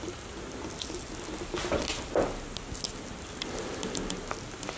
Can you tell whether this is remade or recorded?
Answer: recorded